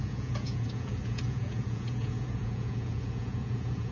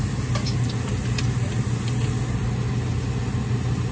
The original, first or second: second